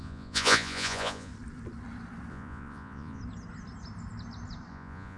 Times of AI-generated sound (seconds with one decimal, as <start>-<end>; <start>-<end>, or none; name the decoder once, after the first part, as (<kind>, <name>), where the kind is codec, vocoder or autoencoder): 0.0-1.3 (vocoder, Vocos); 2.3-3.2; 4.7-5.2